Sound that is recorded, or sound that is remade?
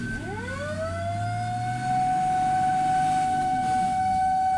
recorded